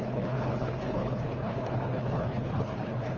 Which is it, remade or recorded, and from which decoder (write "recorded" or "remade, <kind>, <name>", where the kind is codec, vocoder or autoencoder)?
remade, codec, HILCodec